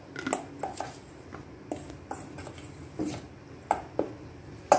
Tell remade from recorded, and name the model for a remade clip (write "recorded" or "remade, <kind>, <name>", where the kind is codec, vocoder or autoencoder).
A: recorded